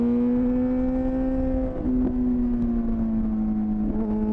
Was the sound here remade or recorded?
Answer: recorded